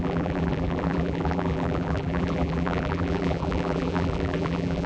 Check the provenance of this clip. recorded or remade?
remade